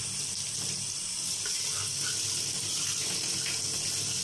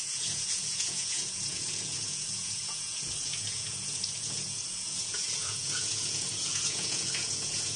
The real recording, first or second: first